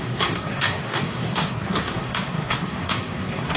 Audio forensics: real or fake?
fake